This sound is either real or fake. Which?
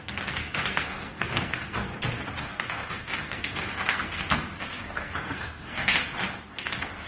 fake